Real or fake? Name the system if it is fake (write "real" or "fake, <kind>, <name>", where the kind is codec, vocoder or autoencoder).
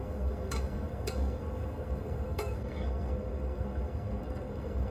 fake, codec, SNAC